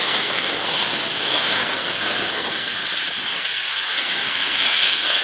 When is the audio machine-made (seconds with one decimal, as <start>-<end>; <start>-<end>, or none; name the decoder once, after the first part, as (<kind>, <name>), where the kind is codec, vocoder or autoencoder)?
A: 0.0-2.8 (codec, SNAC); 3.3-5.2